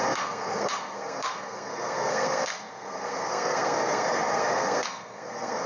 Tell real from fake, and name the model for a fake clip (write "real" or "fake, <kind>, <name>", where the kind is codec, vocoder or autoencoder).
fake, codec, SNAC